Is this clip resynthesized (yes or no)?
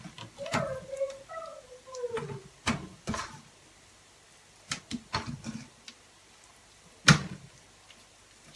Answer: no